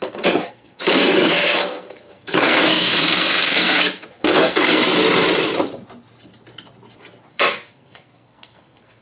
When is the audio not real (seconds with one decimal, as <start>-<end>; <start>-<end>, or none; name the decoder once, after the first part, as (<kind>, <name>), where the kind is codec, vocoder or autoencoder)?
0.0-4.8 (codec, SNAC); 7.3-9.0